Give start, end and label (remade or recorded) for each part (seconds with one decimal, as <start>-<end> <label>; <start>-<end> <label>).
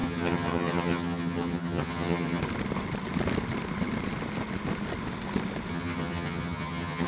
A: 0.0-2.4 remade; 2.4-5.7 recorded; 5.7-7.1 remade